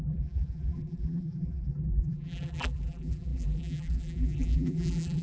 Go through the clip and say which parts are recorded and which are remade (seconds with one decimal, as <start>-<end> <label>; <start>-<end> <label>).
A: 0.0-5.2 remade